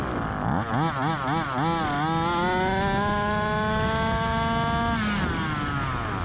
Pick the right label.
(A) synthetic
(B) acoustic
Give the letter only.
B